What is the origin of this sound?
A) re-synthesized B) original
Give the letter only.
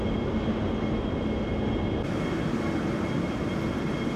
B